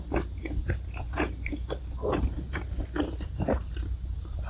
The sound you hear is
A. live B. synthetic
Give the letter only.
A